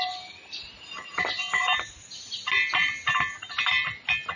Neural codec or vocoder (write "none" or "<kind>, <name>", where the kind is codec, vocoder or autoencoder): none